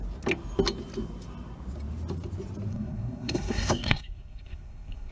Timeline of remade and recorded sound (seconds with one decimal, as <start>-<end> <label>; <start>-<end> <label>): 0.0-2.7 recorded; 2.7-5.1 remade